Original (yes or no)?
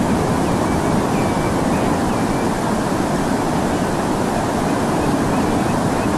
yes